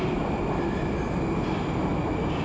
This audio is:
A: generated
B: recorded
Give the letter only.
B